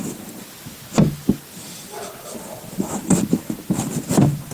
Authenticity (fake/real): real